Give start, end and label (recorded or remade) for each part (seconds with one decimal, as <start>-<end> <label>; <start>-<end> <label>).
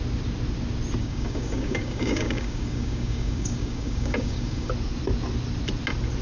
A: 0.0-1.0 recorded; 1.0-4.7 remade; 4.7-6.2 recorded